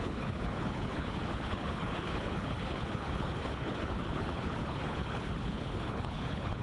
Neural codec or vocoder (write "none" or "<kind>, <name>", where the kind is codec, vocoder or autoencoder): codec, HILCodec